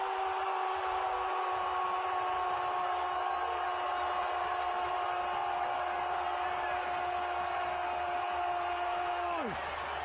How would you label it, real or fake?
real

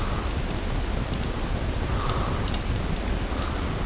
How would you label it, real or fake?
real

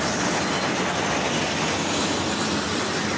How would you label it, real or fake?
real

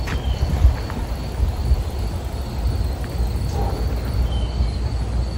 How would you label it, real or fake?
real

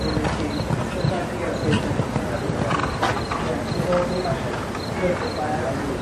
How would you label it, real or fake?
real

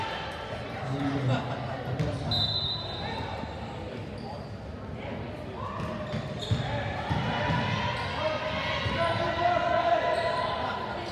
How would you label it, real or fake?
real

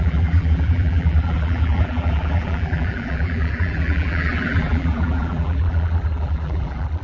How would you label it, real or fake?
fake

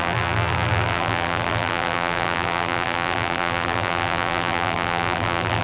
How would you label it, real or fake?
fake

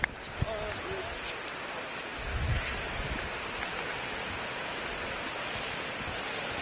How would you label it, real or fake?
real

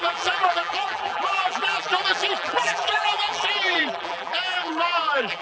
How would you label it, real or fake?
fake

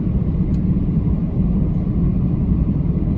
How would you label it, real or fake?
fake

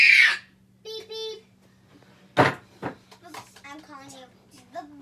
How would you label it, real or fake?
real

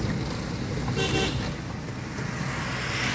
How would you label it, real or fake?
real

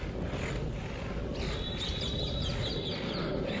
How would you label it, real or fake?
real